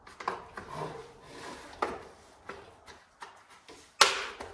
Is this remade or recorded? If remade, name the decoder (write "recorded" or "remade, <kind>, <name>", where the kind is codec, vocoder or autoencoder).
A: recorded